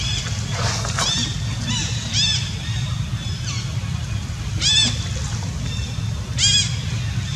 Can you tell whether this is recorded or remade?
recorded